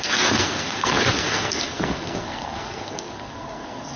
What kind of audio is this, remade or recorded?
remade